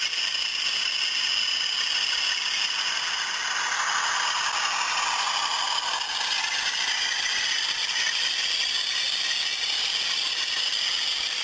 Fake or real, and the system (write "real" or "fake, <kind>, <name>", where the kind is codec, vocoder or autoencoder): real